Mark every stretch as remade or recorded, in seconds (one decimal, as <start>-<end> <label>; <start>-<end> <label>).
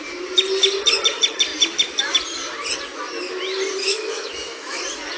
0.0-3.8 recorded; 3.8-4.8 remade; 4.8-5.2 recorded